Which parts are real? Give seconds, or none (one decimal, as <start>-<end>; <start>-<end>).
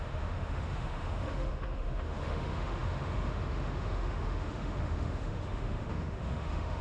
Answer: none